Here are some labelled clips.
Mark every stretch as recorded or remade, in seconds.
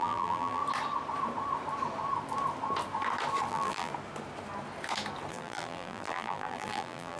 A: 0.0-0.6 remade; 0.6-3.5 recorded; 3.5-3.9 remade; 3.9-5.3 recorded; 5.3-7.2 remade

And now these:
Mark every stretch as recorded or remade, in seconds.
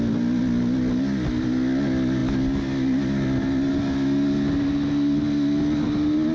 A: 0.0-6.3 recorded